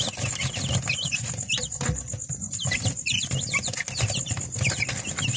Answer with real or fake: real